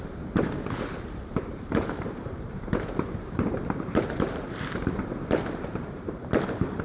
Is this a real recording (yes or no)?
no